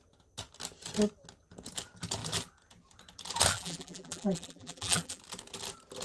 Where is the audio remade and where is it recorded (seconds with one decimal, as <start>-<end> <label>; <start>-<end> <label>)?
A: 0.0-3.5 recorded; 3.5-5.2 remade; 5.2-6.0 recorded